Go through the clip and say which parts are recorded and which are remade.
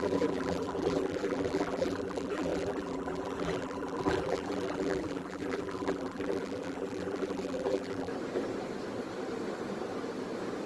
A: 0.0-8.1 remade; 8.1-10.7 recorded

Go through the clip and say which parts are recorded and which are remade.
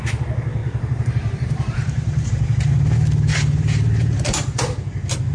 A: 0.0-0.6 recorded; 0.6-2.3 remade; 2.3-3.3 recorded; 3.3-4.6 remade; 4.6-5.3 recorded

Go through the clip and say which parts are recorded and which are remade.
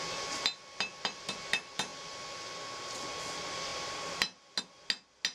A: 0.0-5.3 recorded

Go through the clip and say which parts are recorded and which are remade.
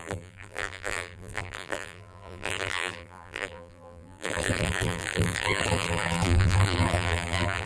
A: 0.0-7.7 remade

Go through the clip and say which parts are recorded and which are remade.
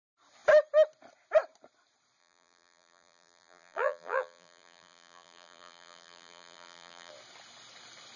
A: 0.0-2.2 recorded; 2.2-7.1 remade; 7.1-8.2 recorded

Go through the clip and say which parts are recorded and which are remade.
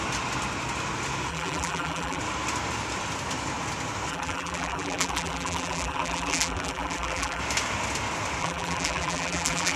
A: 0.0-1.3 recorded; 1.3-2.2 remade; 2.2-4.1 recorded; 4.1-7.4 remade; 7.4-8.4 recorded; 8.4-9.8 remade